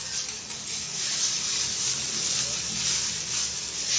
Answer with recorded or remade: recorded